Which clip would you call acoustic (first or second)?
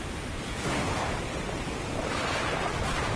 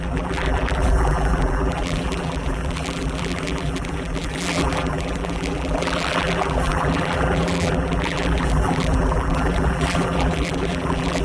first